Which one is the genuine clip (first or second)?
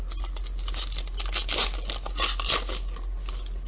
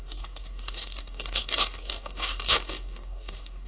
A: first